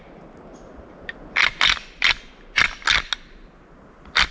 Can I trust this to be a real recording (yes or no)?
yes